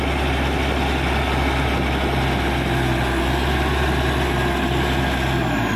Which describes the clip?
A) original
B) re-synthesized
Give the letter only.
A